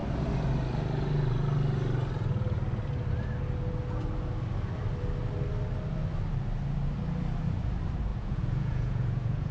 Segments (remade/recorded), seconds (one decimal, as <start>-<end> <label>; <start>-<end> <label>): 0.0-8.1 recorded; 8.1-9.5 remade